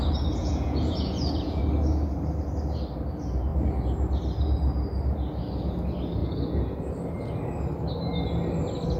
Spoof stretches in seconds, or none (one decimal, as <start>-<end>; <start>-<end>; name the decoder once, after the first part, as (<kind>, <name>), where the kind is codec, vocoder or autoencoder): 0.4-1.6 (vocoder, Vocos); 6.2-6.9